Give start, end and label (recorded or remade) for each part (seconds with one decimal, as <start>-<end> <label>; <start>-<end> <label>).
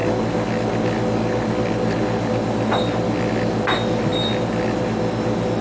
0.0-5.6 recorded